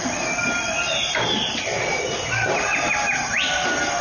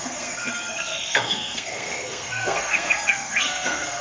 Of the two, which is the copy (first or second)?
second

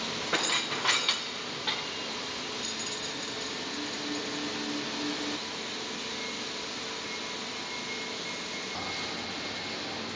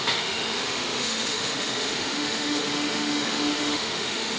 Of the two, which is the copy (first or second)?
second